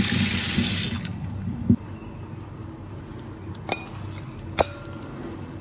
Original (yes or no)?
yes